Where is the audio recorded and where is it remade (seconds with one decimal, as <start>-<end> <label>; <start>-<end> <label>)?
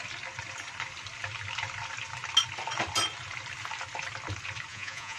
0.0-4.7 recorded; 4.7-5.2 remade